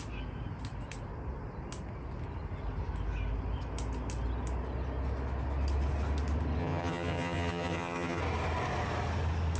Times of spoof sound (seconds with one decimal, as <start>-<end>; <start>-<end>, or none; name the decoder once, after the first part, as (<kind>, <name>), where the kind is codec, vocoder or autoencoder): 6.6-8.2 (vocoder, HiFi-GAN)